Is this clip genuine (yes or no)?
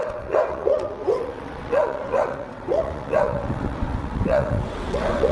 no